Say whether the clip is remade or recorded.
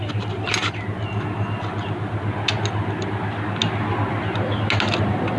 recorded